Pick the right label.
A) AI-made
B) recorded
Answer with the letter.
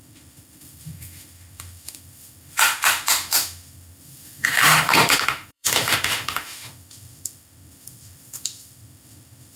A